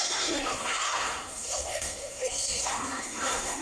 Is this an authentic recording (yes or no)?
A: no